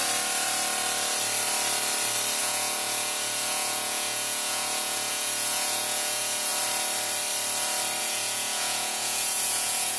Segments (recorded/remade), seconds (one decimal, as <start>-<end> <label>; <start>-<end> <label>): 0.0-2.4 recorded; 2.4-6.5 remade; 6.5-8.0 recorded; 8.0-10.0 remade